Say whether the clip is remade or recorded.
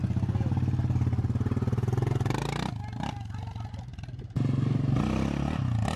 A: recorded